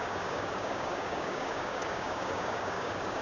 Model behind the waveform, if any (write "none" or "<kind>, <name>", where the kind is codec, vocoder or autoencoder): codec, DAC